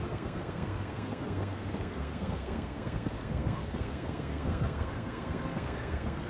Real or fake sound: fake